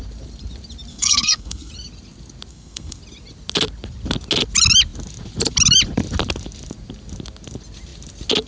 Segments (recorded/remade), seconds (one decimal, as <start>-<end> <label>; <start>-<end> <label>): 0.0-0.9 recorded; 0.9-1.7 remade; 1.7-2.5 recorded; 2.5-3.0 remade; 3.0-8.5 recorded